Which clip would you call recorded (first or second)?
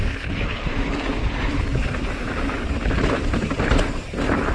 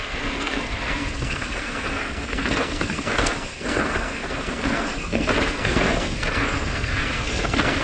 first